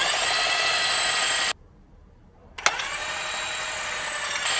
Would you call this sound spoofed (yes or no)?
no